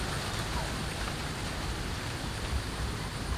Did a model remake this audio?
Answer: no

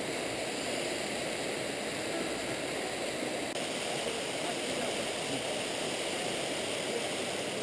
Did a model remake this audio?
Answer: no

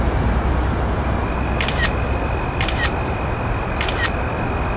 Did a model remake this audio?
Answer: no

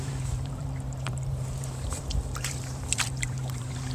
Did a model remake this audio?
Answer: yes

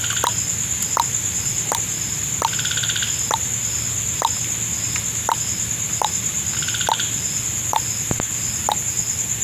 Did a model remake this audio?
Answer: no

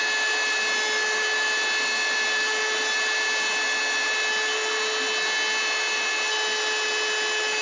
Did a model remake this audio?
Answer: no